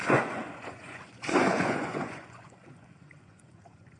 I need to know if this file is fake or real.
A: fake